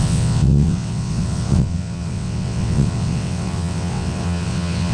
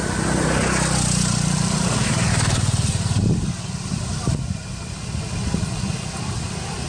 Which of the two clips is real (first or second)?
second